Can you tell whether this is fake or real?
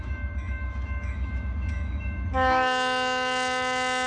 fake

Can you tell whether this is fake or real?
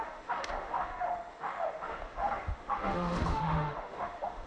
fake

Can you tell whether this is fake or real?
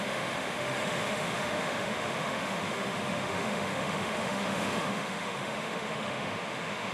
fake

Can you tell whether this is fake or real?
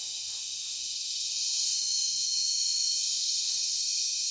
fake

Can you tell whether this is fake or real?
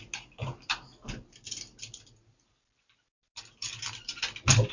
real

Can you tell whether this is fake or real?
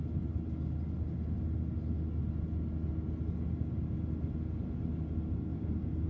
real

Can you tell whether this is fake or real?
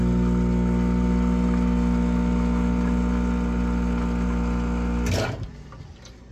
real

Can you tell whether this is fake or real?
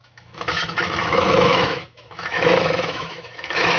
fake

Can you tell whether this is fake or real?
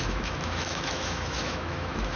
fake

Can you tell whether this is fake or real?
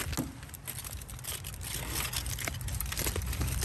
real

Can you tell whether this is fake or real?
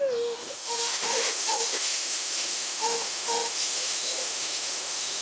fake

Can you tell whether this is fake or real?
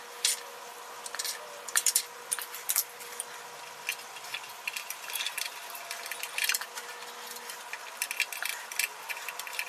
real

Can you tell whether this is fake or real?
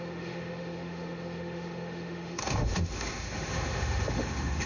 fake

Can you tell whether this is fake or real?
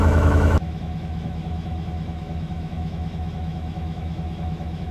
fake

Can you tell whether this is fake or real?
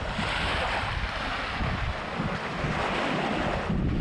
real